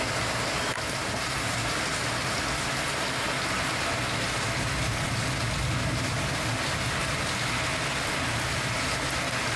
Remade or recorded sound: recorded